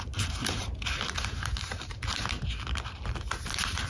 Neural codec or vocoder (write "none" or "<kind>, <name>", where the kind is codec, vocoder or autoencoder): vocoder, BigVGAN v2